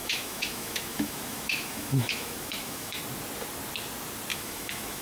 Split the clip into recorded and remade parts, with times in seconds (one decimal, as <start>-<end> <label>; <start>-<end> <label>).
0.0-3.0 remade; 3.0-4.3 recorded; 4.3-5.0 remade